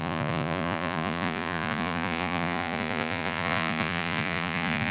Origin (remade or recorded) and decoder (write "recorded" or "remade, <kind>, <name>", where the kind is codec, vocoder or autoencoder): remade, vocoder, Vocos